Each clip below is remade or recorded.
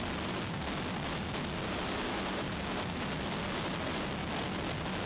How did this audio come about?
recorded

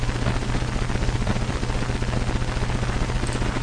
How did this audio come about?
recorded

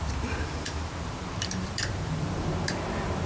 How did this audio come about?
remade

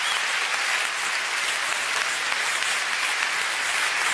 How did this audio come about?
recorded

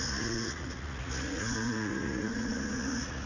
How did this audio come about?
remade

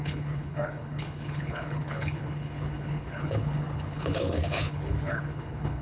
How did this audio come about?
remade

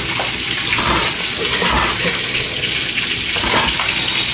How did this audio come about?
recorded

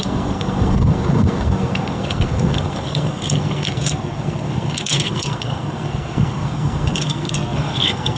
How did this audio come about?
remade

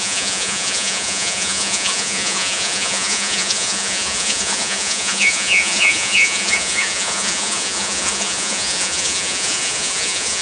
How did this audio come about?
remade